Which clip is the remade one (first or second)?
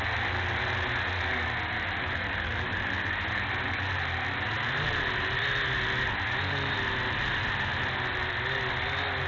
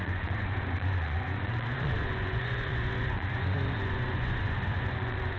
second